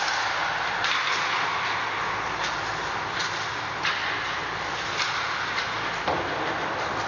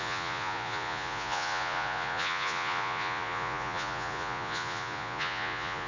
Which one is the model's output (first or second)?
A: second